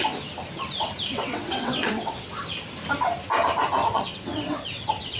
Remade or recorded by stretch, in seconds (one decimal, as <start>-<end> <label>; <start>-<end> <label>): 0.0-1.1 recorded; 1.1-2.4 remade; 2.4-3.8 recorded; 3.8-5.2 remade